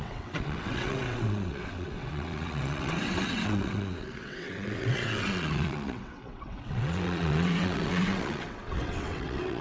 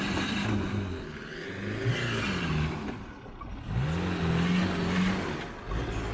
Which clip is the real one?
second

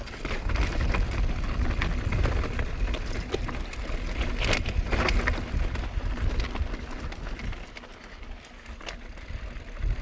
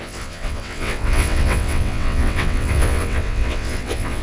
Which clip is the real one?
first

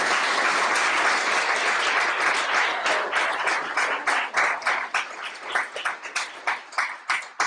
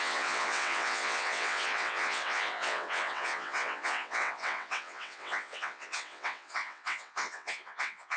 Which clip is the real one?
first